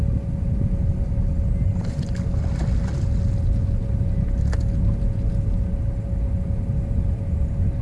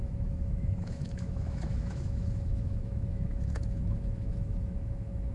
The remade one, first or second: second